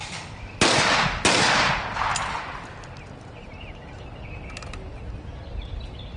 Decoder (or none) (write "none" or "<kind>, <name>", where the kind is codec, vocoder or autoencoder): none